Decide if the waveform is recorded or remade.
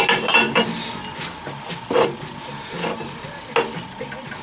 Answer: recorded